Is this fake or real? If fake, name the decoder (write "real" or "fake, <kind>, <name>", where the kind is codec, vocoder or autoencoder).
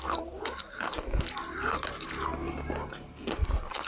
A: real